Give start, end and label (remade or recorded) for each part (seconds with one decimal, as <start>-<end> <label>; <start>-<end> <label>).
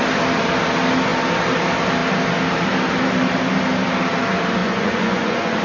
0.0-4.6 recorded; 4.6-5.6 remade